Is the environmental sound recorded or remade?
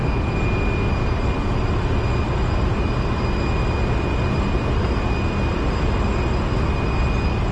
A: recorded